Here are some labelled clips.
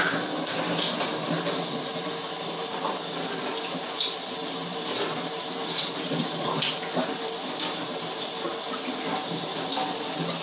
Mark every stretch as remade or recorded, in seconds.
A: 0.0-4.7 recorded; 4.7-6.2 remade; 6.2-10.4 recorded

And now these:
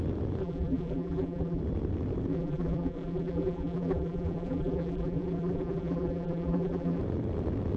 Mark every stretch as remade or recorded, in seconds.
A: 0.0-0.4 recorded; 0.4-1.6 remade; 1.6-2.3 recorded; 2.3-7.0 remade; 7.0-7.8 recorded

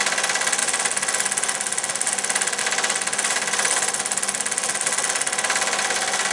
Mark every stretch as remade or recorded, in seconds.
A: 0.0-6.3 recorded

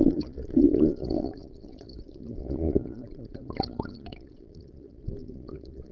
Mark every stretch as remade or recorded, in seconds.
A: 0.0-5.9 remade

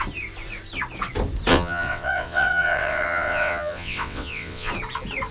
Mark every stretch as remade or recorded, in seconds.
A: 0.0-1.5 recorded; 1.5-4.7 remade; 4.7-5.3 recorded

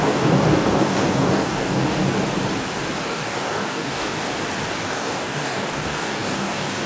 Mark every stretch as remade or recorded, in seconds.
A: 0.0-2.0 remade; 2.0-3.0 recorded; 3.0-4.3 remade; 4.3-4.8 recorded; 4.8-6.9 remade

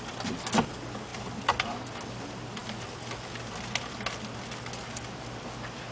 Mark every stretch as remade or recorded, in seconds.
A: 0.0-5.9 recorded